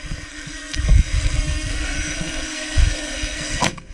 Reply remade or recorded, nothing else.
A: remade